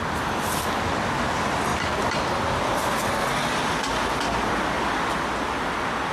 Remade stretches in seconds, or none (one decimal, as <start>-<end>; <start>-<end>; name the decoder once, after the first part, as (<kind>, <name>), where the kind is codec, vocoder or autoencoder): none